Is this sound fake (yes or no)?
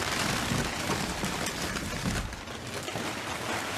no